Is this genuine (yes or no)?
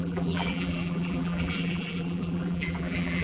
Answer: no